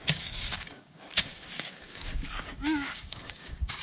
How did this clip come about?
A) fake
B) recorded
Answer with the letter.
A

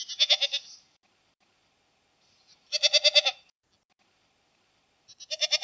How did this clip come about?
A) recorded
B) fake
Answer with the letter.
A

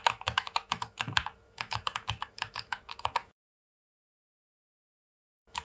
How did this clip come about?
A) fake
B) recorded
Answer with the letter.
A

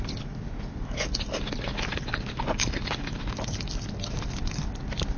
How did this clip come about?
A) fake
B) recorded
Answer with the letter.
B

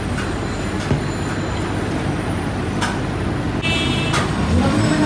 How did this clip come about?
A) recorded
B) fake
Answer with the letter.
A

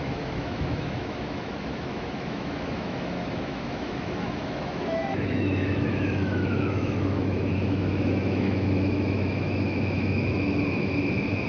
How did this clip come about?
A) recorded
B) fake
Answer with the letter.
B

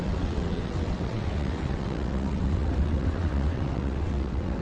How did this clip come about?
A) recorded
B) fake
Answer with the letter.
B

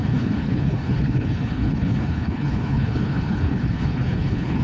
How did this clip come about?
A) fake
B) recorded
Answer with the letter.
A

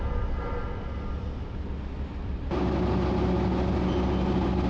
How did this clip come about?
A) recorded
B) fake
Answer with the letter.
A